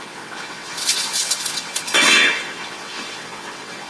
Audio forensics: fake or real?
fake